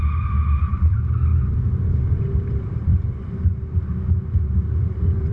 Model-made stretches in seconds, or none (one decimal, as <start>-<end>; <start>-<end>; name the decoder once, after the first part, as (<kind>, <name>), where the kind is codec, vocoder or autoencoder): none